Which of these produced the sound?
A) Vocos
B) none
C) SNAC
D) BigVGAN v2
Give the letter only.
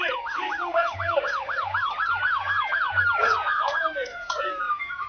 B